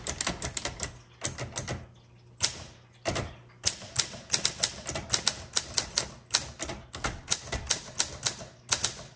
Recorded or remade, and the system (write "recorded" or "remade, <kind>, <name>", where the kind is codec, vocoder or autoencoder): recorded